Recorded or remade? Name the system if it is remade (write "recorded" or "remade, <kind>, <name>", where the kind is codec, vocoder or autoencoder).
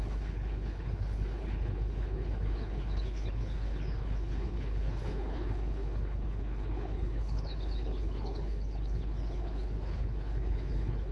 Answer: remade, codec, HILCodec